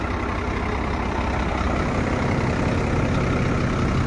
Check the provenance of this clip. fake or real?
real